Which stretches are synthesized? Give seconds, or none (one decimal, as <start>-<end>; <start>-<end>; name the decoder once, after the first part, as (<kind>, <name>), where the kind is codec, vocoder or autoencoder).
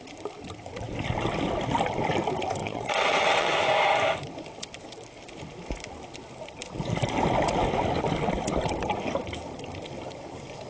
2.6-3.5 (vocoder, WaveNeXt)